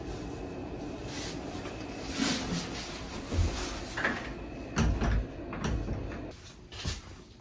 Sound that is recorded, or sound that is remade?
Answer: recorded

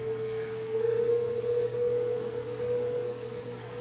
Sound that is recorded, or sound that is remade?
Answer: remade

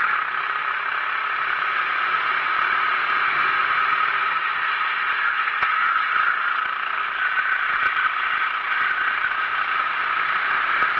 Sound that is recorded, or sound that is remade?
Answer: recorded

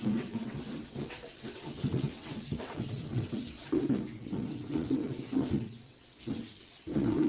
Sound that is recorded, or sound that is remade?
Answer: remade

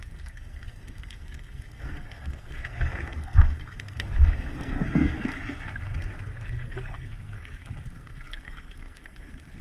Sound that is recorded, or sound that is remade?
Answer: remade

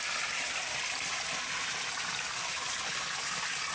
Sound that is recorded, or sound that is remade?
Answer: recorded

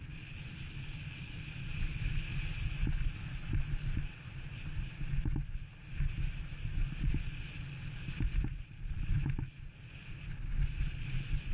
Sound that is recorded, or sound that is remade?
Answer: recorded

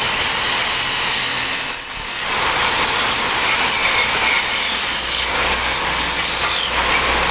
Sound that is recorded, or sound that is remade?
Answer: recorded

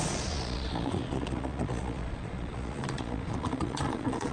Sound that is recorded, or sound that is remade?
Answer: remade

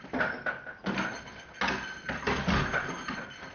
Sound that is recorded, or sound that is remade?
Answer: recorded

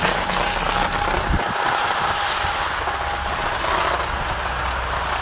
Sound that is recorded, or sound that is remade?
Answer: recorded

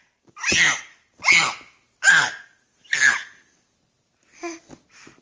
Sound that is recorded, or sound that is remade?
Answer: recorded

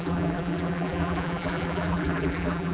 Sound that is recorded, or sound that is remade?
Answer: remade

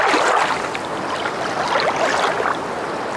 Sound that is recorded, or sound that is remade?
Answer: recorded